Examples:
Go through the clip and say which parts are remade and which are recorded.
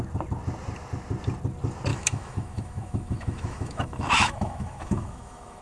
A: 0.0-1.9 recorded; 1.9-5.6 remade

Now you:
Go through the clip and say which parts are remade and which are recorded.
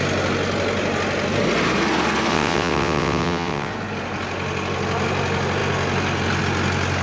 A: 0.0-2.3 recorded; 2.3-3.7 remade; 3.7-7.0 recorded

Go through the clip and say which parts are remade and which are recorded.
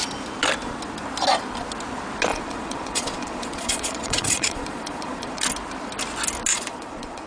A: 0.0-2.3 recorded; 2.3-5.4 remade; 5.4-6.5 recorded; 6.5-7.3 remade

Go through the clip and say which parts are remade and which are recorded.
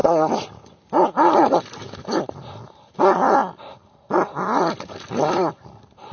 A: 0.0-6.1 recorded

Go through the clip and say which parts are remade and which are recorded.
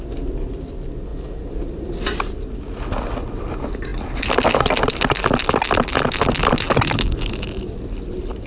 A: 0.0-8.5 recorded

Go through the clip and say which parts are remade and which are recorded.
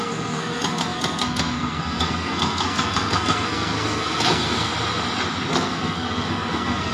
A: 0.0-4.7 remade; 4.7-5.5 recorded; 5.5-6.9 remade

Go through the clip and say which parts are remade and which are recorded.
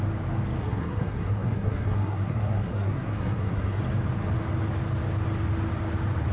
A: 0.0-0.6 recorded; 0.6-3.8 remade; 3.8-6.3 recorded